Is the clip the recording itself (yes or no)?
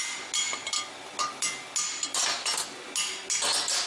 yes